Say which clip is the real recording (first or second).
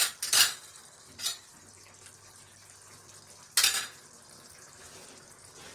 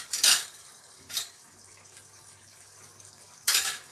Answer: first